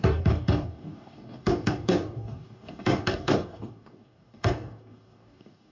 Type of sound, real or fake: fake